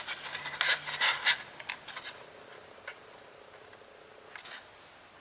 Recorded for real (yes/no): yes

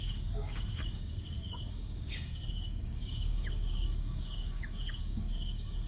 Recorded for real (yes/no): no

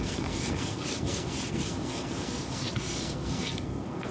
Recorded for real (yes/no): no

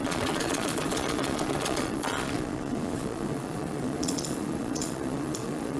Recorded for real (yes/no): no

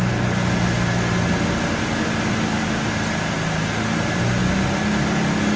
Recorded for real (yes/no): yes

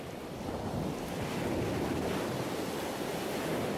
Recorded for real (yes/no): yes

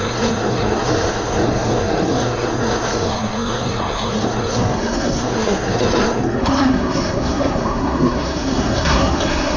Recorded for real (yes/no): no